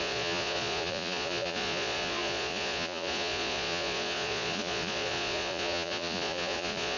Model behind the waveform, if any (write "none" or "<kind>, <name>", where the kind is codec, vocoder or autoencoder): vocoder, Vocos